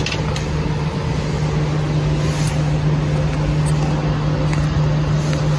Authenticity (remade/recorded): recorded